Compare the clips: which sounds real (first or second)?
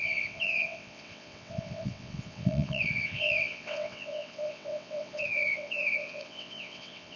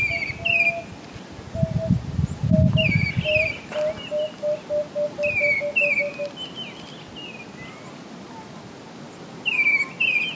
second